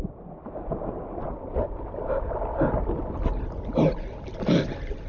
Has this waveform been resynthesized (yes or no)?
no